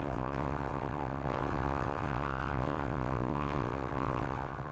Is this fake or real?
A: fake